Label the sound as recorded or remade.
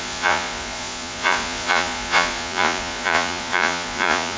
remade